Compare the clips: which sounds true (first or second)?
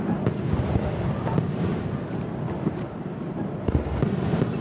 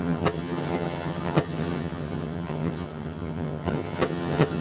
first